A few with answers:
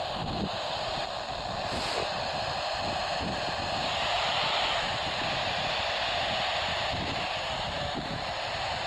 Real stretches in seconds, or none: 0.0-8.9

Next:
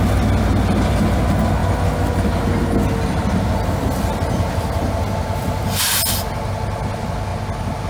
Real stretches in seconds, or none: 0.0-7.9

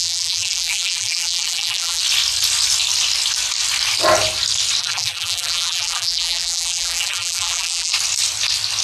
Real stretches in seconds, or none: 2.0-4.8; 7.9-8.8

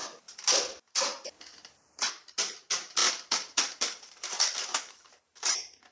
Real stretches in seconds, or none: 2.1-3.0; 5.2-5.9

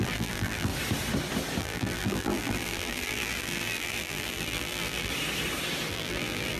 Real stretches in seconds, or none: 0.7-1.6; 5.1-5.9

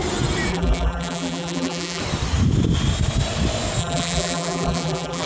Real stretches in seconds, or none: 0.0-0.5; 2.0-3.8

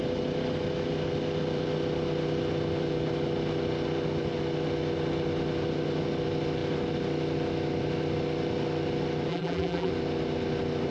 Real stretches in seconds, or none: 0.0-9.3; 9.9-10.9

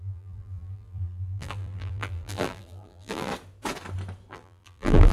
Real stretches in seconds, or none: 3.3-4.3